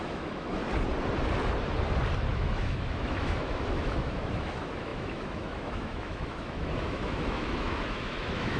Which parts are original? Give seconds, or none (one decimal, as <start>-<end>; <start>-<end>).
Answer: 0.6-2.3